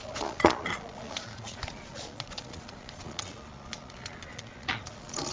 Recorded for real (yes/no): no